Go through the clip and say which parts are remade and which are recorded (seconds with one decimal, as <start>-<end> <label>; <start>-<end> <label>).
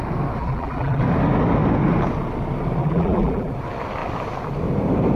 0.0-0.4 recorded; 0.4-1.0 remade; 1.0-2.8 recorded; 2.8-3.5 remade; 3.5-5.2 recorded